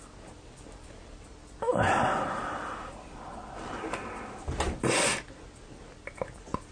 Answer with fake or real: real